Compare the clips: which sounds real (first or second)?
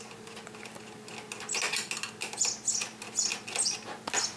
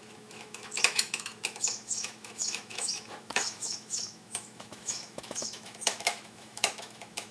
first